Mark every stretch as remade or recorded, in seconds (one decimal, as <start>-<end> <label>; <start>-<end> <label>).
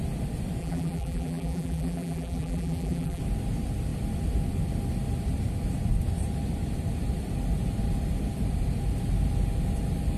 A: 0.0-0.6 recorded; 0.6-3.2 remade; 3.2-10.2 recorded